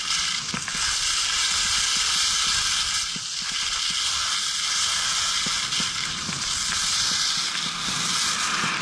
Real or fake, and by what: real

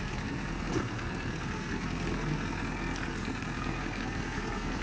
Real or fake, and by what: fake, codec, SNAC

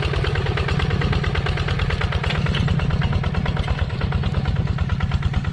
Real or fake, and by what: real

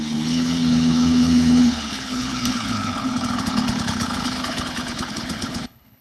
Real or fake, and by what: fake, codec, HILCodec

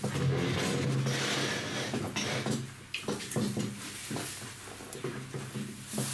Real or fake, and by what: real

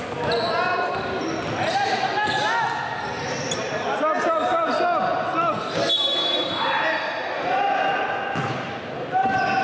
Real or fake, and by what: real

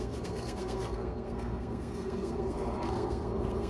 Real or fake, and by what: fake, codec, SNAC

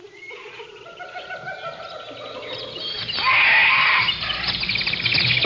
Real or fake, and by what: real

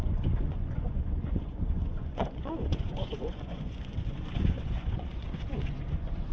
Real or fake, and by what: fake, vocoder, Vocos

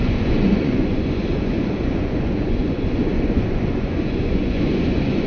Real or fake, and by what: fake, vocoder, Vocos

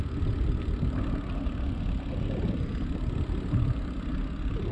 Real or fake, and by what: real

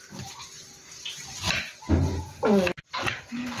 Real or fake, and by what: real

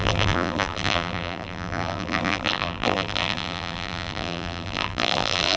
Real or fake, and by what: fake, vocoder, BigVGAN v2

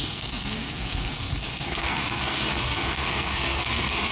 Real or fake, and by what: fake, codec, SNAC